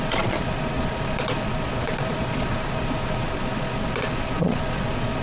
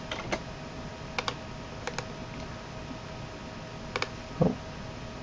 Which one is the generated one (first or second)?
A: first